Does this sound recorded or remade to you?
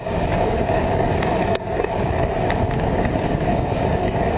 remade